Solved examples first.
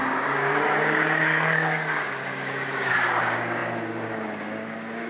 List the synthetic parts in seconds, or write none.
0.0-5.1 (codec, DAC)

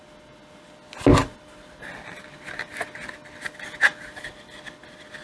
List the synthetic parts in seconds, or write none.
none

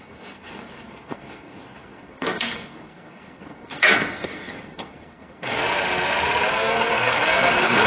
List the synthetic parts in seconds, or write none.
0.0-5.6 (codec, SNAC); 6.5-7.9

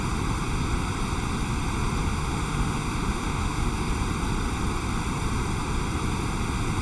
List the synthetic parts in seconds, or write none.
2.0-3.9 (autoencoder, DAC-VAE)

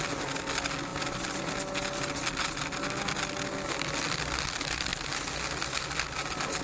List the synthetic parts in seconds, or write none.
none

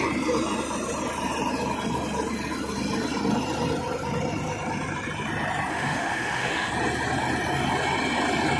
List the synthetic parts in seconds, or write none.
5.7-6.7 (autoencoder, DAC-VAE)

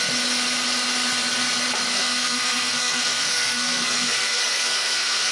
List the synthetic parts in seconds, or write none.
1.9-5.3 (codec, SNAC)

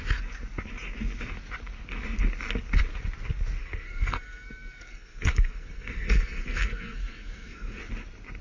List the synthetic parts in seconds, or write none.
3.6-7.8 (codec, SNAC)